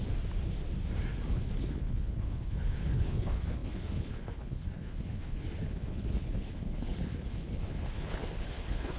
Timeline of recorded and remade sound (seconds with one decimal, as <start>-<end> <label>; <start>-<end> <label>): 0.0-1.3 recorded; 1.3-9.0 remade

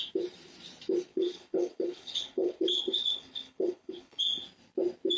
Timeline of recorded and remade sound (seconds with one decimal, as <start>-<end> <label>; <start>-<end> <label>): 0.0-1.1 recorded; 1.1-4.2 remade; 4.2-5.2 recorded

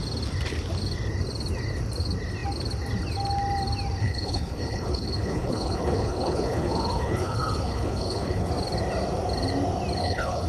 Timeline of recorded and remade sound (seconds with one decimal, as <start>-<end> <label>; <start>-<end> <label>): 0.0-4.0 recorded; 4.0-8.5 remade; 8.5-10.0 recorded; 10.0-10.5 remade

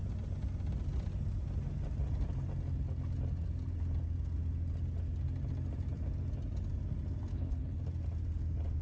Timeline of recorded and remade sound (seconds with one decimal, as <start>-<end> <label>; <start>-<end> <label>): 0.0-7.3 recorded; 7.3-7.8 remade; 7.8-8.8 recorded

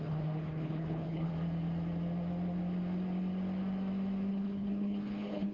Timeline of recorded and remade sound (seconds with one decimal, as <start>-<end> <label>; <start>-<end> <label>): 0.0-1.3 remade; 1.3-4.3 recorded; 4.3-5.5 remade

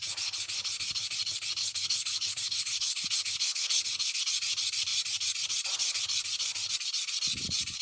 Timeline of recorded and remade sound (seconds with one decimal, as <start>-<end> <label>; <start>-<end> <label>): 0.0-1.6 recorded; 1.6-4.2 remade; 4.2-7.8 recorded

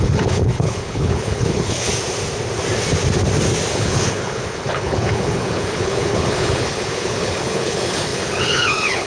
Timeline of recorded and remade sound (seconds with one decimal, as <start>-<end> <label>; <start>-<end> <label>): 0.0-1.9 remade; 1.9-3.7 recorded; 3.7-9.1 remade